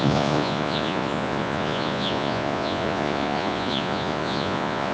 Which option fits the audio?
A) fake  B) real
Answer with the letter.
A